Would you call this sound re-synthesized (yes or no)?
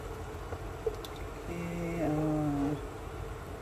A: no